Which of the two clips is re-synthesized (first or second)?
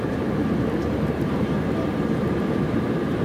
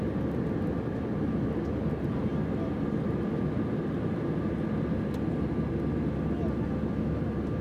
first